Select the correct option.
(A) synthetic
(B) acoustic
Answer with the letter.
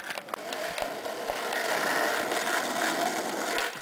B